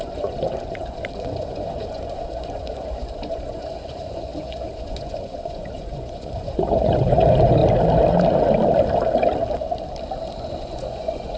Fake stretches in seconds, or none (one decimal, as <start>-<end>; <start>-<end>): 0.0-7.6; 10.4-11.4